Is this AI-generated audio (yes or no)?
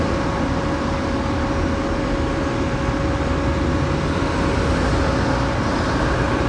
no